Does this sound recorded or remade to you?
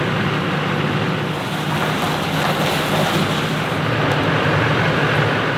recorded